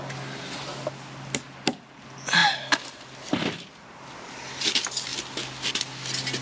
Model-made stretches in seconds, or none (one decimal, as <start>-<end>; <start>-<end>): none